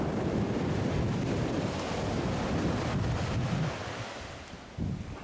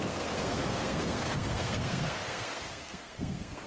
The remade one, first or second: second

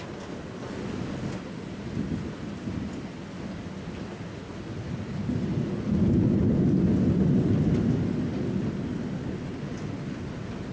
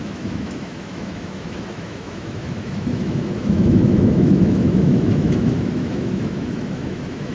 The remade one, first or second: second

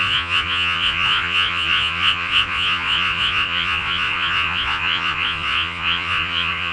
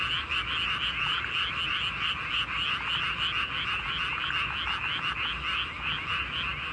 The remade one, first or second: first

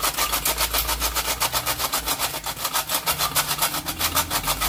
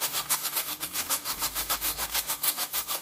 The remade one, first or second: second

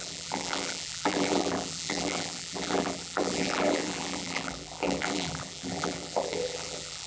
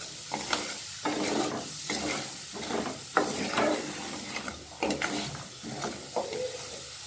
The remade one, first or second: first